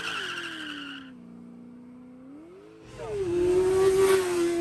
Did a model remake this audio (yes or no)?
no